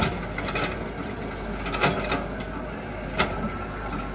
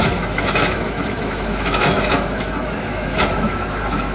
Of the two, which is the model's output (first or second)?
second